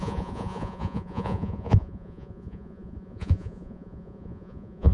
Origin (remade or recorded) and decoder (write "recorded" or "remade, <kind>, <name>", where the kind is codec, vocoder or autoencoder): remade, vocoder, Vocos